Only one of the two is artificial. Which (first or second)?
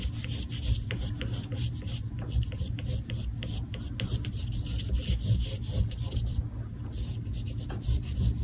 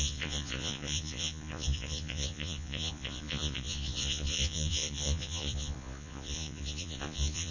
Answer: second